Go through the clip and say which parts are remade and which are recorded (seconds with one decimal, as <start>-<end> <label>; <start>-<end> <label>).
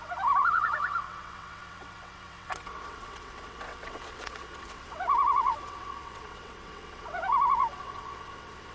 0.0-8.7 remade